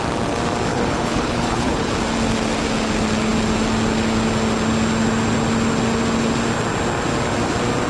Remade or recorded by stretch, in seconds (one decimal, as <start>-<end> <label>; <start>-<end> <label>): 0.0-0.7 recorded; 0.7-1.9 remade; 1.9-7.9 recorded